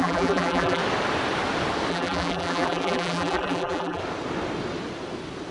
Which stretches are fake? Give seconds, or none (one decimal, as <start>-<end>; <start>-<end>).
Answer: 0.0-0.8; 1.9-4.0